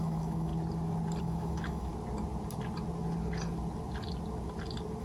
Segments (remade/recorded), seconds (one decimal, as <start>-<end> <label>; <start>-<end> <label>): 0.0-0.5 remade; 0.5-1.2 recorded; 1.2-1.9 remade; 1.9-5.0 recorded